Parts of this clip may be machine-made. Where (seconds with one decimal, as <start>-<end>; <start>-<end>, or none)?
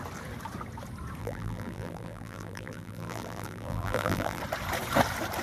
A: 1.2-4.4